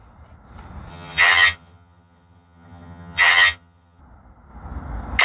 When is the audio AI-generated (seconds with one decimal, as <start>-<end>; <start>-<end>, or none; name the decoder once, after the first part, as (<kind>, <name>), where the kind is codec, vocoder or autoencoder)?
0.9-4.0 (vocoder, HiFi-GAN)